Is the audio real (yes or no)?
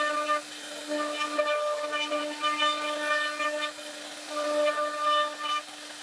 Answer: yes